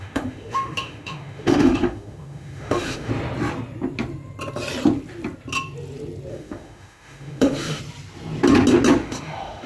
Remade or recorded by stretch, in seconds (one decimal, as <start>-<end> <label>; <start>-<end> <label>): 0.0-3.1 remade; 3.1-6.3 recorded; 6.3-7.8 remade; 7.8-9.0 recorded; 9.0-9.7 remade